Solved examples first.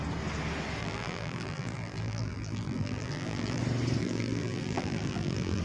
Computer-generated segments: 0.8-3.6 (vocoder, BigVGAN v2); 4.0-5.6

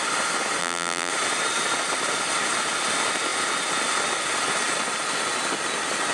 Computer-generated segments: 0.6-1.1 (vocoder, BigVGAN v2)

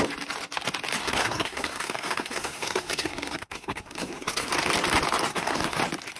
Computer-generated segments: 1.0-4.5 (codec, SNAC); 5.3-5.8

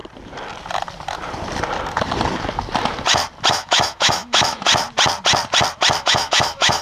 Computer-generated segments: 3.5-4.7 (autoencoder, DAC-VAE); 6.0-6.8

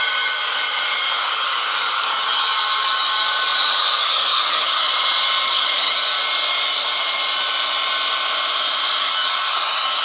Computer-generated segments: 0.0-4.9 (codec, DAC); 5.5-6.2; 9.0-10.0

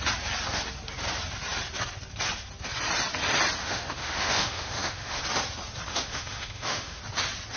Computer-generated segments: 3.6-5.2 (autoencoder, DAC-VAE); 5.9-7.0

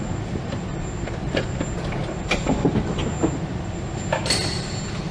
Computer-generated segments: none